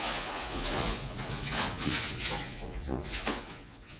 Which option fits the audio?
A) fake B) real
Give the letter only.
A